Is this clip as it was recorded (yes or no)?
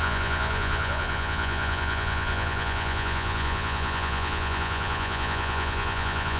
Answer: no